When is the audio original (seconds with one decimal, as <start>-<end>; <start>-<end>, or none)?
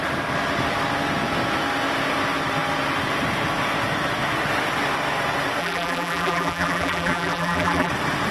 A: 0.0-5.6; 7.9-8.3